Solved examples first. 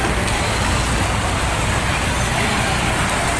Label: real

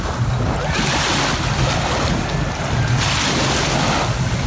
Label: real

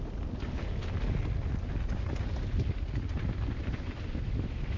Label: real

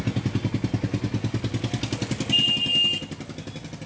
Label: real